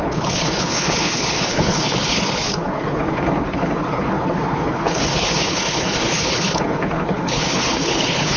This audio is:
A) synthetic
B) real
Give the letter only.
A